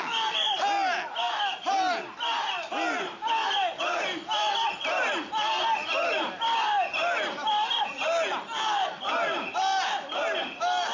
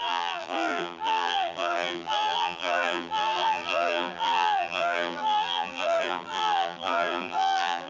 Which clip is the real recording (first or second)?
first